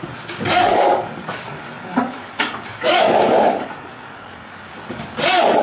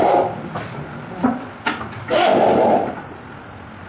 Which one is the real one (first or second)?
second